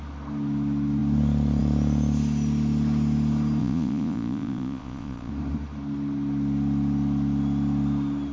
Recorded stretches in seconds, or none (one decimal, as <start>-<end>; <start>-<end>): 0.0-3.6; 5.3-8.3